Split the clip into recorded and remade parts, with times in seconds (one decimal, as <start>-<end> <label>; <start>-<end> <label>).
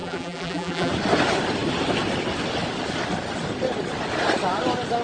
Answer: 0.0-0.9 remade; 0.9-5.0 recorded